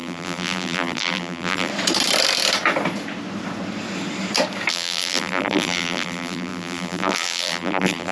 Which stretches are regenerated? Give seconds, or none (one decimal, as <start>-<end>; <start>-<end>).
0.0-1.7; 4.7-8.1